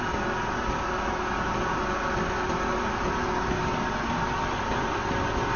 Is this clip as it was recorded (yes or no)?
yes